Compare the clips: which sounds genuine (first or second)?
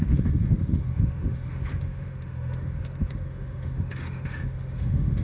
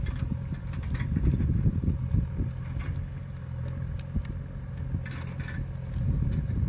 second